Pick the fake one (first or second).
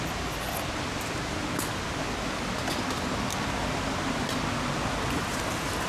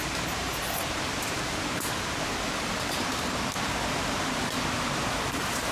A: second